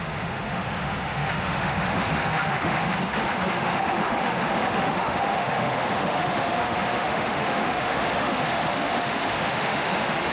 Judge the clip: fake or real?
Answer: fake